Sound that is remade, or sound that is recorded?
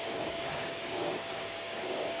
remade